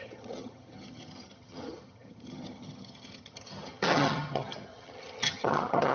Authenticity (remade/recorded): remade